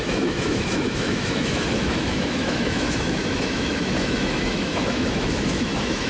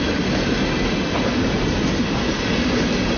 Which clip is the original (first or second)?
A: second